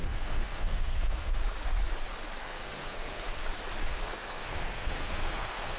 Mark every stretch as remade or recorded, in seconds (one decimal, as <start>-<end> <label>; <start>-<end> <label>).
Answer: 0.0-1.4 remade; 1.4-2.4 recorded; 2.4-3.4 remade; 3.4-3.9 recorded; 3.9-5.8 remade